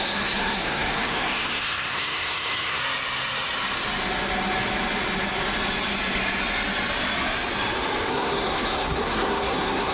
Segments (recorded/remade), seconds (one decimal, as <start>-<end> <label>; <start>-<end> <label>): 0.0-2.8 remade; 2.8-8.1 recorded; 8.1-9.9 remade